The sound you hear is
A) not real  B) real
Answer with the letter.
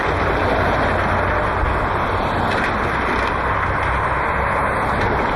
B